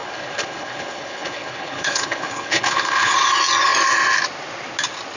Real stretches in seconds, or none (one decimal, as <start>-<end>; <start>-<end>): 3.1-5.2